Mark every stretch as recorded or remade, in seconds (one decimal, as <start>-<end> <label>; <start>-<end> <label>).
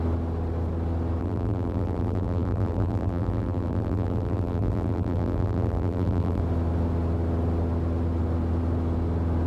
0.0-1.2 recorded; 1.2-6.4 remade; 6.4-9.5 recorded